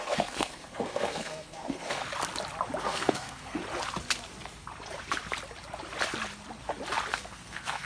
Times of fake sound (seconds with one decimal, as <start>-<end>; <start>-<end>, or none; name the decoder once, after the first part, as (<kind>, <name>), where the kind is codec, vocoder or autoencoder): 0.0-2.0 (codec, SNAC); 2.8-3.6; 7.1-7.9